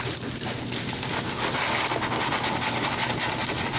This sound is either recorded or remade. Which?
recorded